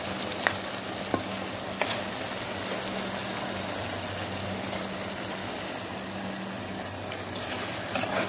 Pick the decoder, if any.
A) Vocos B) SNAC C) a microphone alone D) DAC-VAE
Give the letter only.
C